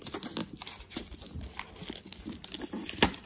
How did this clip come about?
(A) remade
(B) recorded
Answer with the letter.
B